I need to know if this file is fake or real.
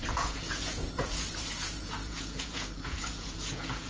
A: fake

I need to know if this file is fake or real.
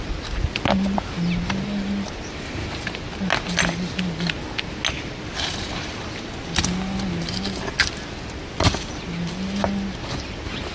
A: real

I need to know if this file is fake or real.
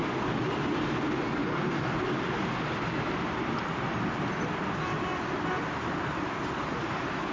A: real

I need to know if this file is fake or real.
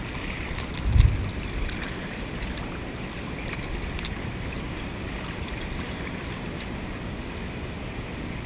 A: real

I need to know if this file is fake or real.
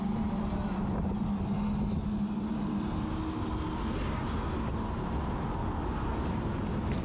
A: real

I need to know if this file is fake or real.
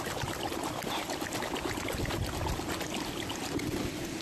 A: real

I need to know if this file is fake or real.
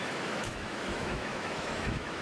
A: fake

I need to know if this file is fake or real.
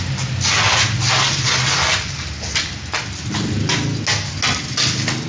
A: real